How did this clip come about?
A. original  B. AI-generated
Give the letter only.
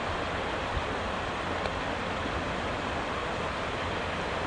A